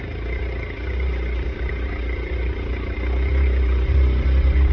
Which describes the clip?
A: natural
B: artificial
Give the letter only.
A